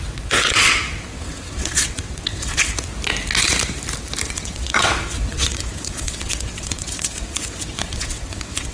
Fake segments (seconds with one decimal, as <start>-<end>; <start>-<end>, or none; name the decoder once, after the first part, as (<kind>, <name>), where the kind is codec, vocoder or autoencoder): 0.0-2.9 (vocoder, WaveNeXt); 4.3-8.7